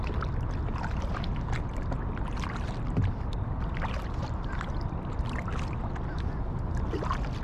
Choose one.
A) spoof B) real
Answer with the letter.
B